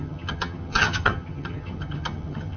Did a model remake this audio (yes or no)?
yes